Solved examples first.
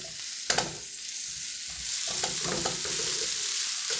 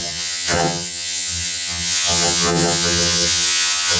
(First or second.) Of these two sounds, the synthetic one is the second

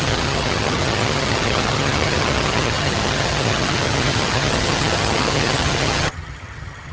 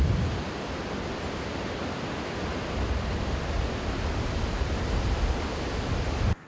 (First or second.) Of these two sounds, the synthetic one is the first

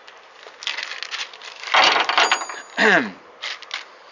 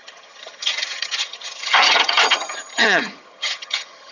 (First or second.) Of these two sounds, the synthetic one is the second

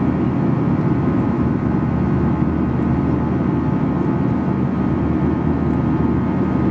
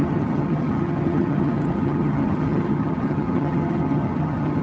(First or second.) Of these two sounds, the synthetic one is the second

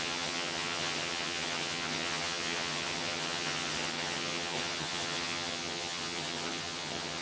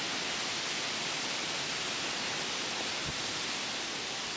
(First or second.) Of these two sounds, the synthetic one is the first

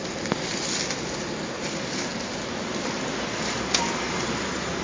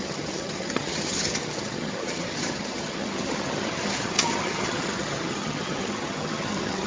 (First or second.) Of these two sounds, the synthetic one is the second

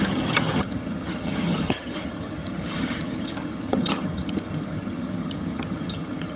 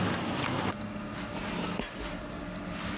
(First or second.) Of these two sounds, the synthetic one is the first